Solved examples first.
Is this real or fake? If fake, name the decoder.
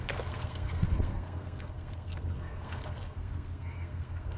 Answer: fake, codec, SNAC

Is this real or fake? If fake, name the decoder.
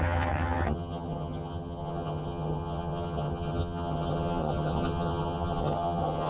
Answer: fake, vocoder, HiFi-GAN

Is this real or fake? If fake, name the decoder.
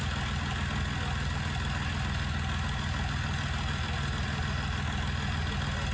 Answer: real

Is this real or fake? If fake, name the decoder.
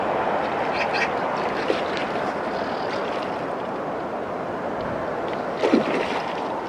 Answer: real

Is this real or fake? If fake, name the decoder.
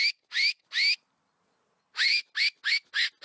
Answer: real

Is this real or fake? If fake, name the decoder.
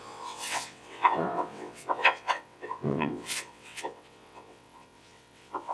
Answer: fake, vocoder, WaveNeXt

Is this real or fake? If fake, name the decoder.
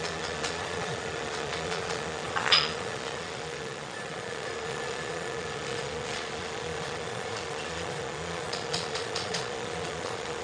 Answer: fake, vocoder, Vocos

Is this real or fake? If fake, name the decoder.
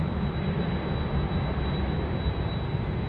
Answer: real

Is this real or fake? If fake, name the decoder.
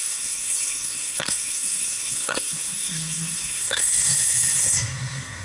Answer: fake, codec, SNAC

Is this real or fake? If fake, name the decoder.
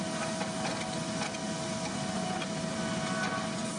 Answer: real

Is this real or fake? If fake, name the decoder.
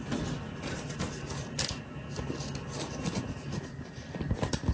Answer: real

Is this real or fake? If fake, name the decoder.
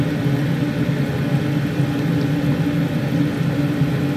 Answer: real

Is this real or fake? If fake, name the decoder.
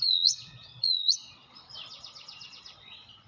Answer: fake, vocoder, Vocos